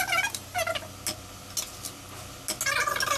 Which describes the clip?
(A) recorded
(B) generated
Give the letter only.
A